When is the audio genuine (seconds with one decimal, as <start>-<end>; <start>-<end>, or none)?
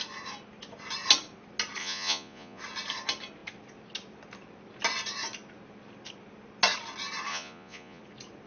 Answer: 0.0-1.8; 2.6-7.3; 8.0-8.5